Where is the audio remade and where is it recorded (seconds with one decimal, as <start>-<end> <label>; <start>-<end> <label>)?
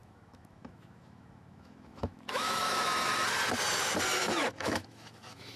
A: 0.0-3.1 remade; 3.1-4.2 recorded; 4.2-5.6 remade